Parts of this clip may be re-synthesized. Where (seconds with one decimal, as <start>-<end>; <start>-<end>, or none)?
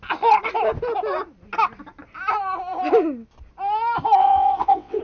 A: 4.2-5.0